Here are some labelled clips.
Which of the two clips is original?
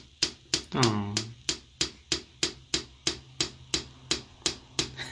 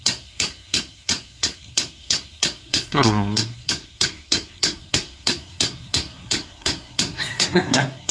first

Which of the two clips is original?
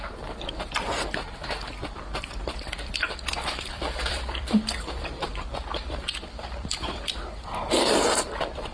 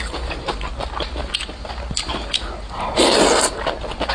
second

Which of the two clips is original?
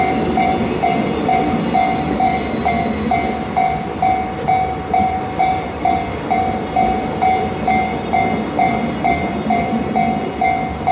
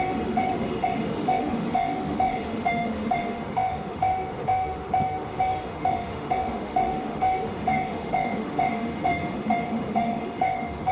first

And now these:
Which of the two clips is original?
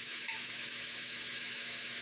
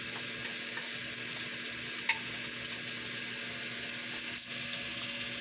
second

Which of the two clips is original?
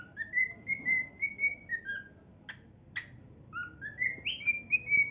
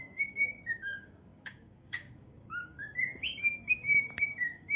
first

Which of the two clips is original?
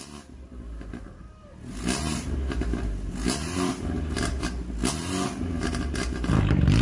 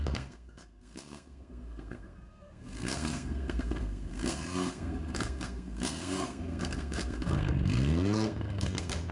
first